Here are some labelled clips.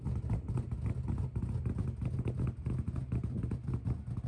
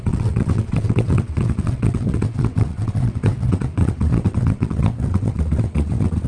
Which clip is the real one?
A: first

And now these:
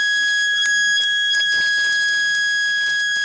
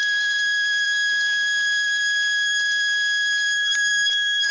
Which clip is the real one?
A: first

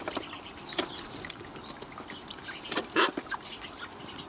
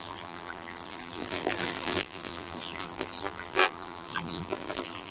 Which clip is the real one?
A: first